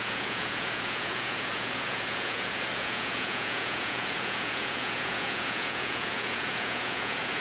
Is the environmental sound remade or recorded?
remade